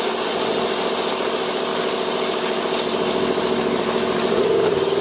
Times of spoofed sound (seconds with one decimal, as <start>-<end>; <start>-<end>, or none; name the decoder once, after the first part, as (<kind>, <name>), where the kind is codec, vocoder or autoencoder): none